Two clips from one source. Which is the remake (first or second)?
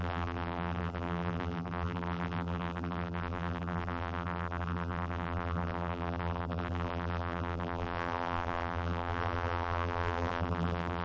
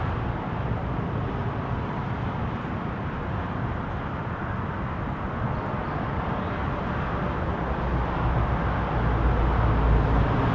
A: first